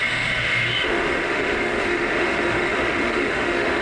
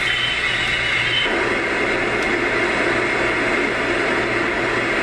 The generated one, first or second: first